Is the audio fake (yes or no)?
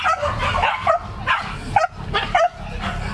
no